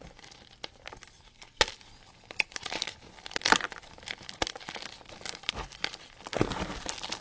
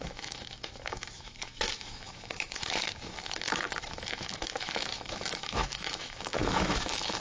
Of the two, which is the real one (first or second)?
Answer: first